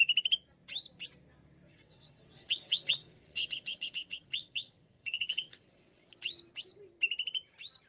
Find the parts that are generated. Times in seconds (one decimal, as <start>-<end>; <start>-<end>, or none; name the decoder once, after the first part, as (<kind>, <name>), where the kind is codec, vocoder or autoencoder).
1.7-6.3 (vocoder, WaveNeXt)

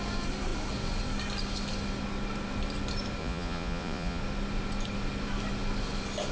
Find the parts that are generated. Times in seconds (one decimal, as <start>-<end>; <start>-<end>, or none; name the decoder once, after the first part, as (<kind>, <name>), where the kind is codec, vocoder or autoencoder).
3.2-4.2 (vocoder, Vocos)

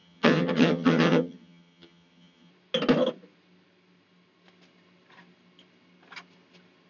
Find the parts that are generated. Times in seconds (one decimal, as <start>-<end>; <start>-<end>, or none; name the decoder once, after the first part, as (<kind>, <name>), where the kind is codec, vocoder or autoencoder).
0.0-2.5 (vocoder, HiFi-GAN)

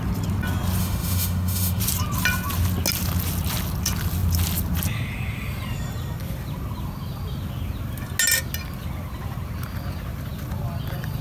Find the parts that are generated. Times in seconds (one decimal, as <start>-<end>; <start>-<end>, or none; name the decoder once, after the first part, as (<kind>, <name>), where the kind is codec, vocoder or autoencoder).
0.8-1.8 (autoencoder, DAC-VAE)

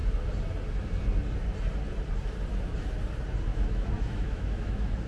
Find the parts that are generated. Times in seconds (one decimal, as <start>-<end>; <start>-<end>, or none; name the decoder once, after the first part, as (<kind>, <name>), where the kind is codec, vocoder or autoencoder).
3.5-5.1 (autoencoder, DAC-VAE)

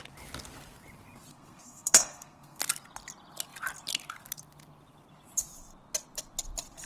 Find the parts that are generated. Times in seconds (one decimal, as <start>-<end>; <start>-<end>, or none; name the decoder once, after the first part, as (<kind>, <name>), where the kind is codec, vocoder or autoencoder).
1.3-2.6 (codec, SNAC)

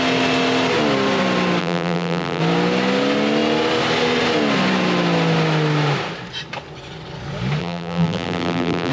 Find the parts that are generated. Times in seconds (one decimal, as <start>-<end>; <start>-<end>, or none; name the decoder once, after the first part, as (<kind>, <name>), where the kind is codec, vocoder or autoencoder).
1.6-2.4 (vocoder, BigVGAN v2); 7.6-8.9